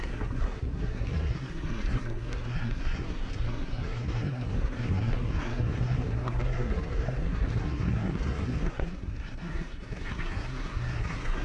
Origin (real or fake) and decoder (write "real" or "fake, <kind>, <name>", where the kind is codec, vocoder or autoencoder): fake, codec, SNAC